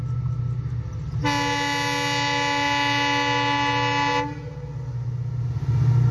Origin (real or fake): real